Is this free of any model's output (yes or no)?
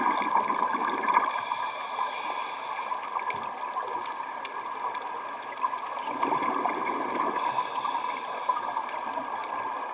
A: yes